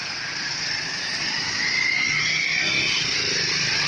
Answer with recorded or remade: recorded